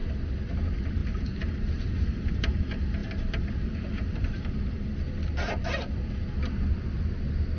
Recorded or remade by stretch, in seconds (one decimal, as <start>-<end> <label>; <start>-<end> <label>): 0.0-3.0 recorded; 3.0-6.0 remade; 6.0-7.6 recorded